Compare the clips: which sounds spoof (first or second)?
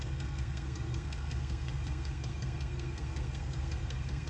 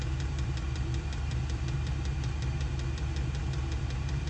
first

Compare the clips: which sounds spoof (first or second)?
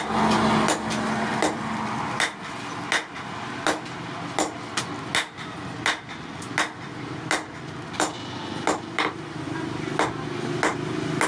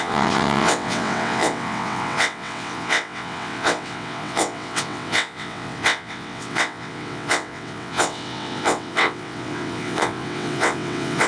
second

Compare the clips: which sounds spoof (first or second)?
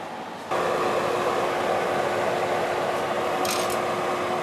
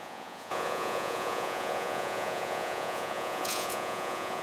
second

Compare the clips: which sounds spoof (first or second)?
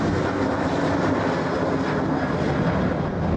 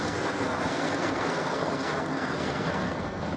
second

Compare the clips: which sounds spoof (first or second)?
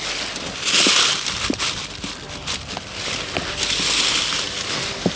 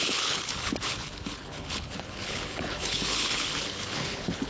second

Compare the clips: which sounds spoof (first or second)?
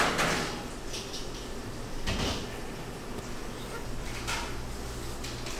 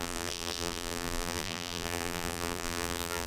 second